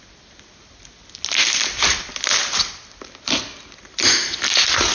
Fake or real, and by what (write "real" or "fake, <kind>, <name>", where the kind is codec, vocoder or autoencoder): real